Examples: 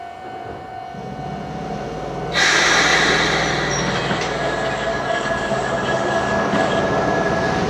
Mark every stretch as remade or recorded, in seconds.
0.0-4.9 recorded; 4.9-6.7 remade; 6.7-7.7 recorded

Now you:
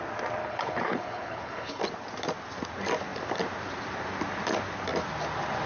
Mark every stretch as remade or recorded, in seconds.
0.0-0.4 recorded; 0.4-1.8 remade; 1.8-5.7 recorded

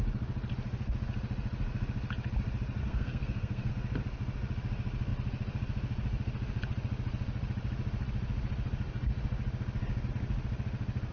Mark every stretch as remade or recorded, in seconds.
0.0-2.8 recorded; 2.8-3.7 remade; 3.7-11.1 recorded

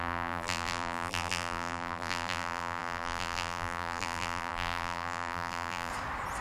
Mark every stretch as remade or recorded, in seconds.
0.0-5.9 remade; 5.9-6.4 recorded

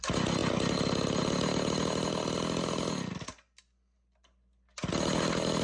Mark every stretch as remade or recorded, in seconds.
0.0-5.6 recorded

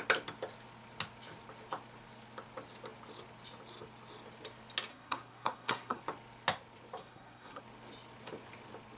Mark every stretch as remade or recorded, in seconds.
0.0-4.9 recorded; 4.9-6.0 remade; 6.0-7.0 recorded; 7.0-7.6 remade; 7.6-9.0 recorded